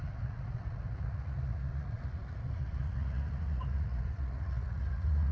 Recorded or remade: remade